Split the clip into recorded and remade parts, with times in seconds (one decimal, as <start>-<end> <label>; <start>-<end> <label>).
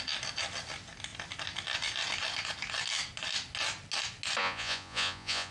0.0-4.4 recorded; 4.4-5.5 remade